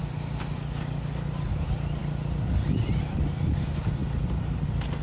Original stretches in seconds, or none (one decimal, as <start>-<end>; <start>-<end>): 0.0-5.0